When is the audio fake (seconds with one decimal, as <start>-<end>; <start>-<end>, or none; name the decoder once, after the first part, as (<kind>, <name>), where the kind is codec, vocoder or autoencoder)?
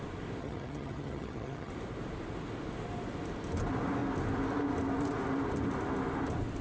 0.4-1.7 (vocoder, HiFi-GAN)